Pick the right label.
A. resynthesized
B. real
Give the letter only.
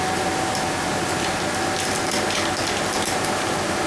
B